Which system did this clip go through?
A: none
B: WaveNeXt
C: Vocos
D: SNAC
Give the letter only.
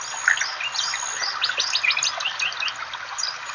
A